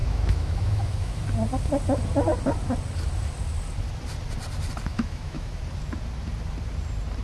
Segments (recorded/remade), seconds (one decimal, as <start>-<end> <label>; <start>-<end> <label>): 0.0-1.2 remade; 1.2-4.9 recorded; 4.9-5.6 remade; 5.6-7.2 recorded